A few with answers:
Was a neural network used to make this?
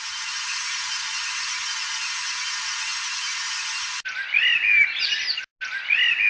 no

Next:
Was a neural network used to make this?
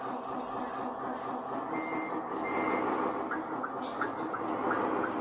no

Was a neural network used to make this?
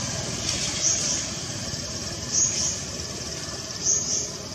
no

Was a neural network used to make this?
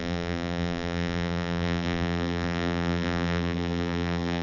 yes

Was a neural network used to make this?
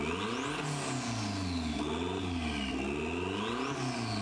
no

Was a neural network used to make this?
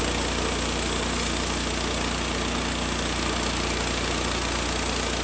no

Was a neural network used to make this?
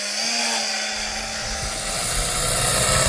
no